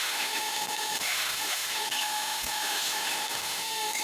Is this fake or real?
fake